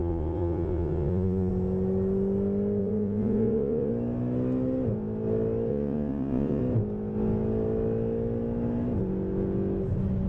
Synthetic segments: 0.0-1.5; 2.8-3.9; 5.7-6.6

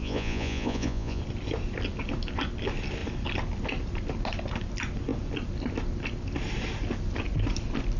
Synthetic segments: 0.0-1.2

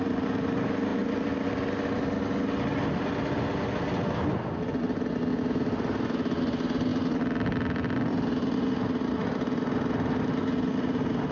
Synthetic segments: none

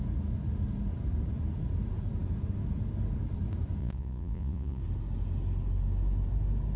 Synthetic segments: 3.8-4.8

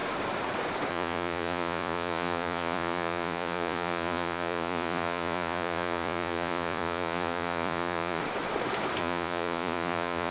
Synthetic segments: 0.9-8.2; 9.0-10.3

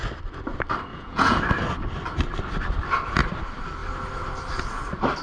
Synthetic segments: 0.9-1.4